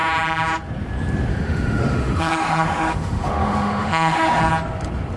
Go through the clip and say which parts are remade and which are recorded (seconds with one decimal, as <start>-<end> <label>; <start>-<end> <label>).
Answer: 0.0-1.3 recorded; 1.3-4.4 remade; 4.4-5.2 recorded